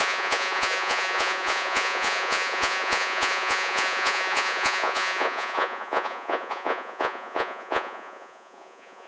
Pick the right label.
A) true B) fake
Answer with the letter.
B